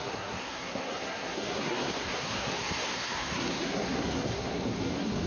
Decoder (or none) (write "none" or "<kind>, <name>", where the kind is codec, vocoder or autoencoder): codec, SNAC